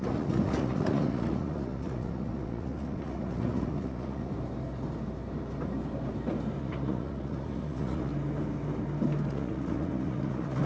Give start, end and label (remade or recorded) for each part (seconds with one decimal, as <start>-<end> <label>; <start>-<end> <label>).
0.0-4.3 remade; 4.3-6.6 recorded; 6.6-8.1 remade; 8.1-9.3 recorded; 9.3-10.7 remade